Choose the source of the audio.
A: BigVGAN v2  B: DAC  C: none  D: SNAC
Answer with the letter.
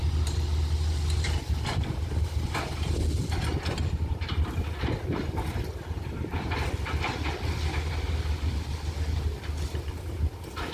C